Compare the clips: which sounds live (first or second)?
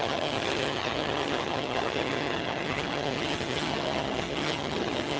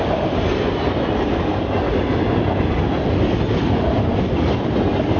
second